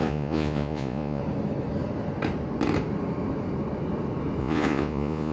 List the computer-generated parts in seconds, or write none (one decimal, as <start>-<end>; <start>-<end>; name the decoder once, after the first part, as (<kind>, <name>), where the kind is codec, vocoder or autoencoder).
0.0-1.2 (vocoder, Vocos); 4.4-5.3